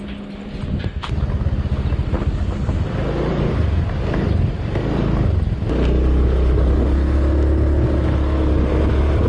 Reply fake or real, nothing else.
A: real